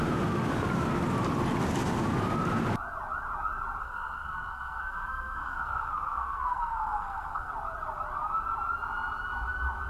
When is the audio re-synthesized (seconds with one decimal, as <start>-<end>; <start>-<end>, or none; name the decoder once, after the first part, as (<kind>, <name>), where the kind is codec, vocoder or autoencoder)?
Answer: 3.8-7.5 (codec, SNAC)

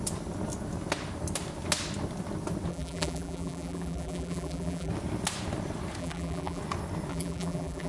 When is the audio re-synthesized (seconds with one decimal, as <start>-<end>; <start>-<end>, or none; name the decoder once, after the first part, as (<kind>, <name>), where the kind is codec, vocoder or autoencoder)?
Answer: 2.7-4.9 (vocoder, BigVGAN v2); 6.0-6.6; 7.1-7.9

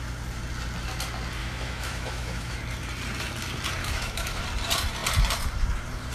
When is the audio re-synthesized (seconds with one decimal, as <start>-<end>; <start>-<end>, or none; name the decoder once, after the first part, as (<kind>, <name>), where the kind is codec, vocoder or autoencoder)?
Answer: 1.4-2.6 (autoencoder, DAC-VAE); 3.8-4.4

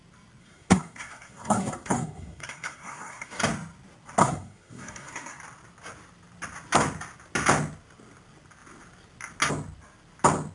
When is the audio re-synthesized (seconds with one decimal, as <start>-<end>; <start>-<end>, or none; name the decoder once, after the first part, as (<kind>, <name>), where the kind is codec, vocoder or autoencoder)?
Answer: 0.4-3.4 (codec, SNAC); 4.2-5.4

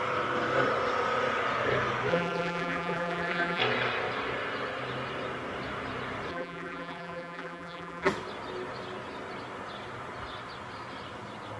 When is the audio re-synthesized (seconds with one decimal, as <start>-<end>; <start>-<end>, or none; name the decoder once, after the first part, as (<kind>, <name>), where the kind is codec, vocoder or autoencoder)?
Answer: 2.1-3.6 (vocoder, BigVGAN v2); 6.3-8.1

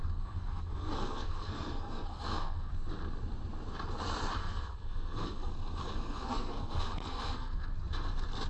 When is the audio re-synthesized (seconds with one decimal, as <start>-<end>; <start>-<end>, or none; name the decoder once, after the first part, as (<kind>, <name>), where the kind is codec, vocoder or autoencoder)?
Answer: 0.0-2.7 (codec, SNAC); 4.4-5.5; 5.9-7.7

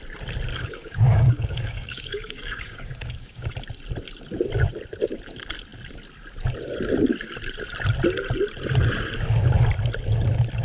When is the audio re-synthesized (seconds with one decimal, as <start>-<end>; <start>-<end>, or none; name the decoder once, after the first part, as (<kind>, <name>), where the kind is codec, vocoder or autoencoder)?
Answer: 0.5-3.5 (codec, DAC)

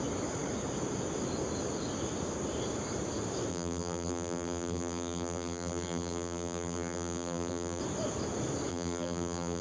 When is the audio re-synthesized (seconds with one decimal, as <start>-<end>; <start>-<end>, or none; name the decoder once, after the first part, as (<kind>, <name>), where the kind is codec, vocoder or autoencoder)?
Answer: 3.5-7.8 (vocoder, BigVGAN v2); 8.7-9.6